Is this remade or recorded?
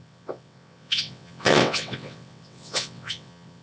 remade